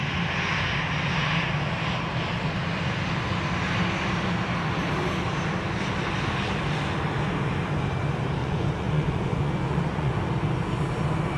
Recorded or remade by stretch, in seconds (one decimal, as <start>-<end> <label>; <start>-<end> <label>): 0.0-8.4 recorded; 8.4-10.1 remade; 10.1-11.4 recorded